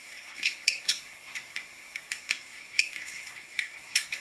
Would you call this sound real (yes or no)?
no